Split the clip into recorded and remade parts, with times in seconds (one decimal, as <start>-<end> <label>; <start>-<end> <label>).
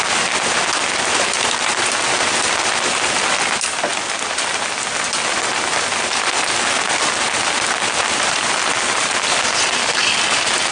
0.0-10.7 recorded